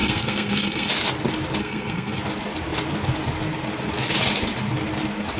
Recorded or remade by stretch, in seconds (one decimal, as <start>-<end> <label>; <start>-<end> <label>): 0.0-0.9 remade; 0.9-1.6 recorded; 1.6-2.2 remade; 2.2-5.4 recorded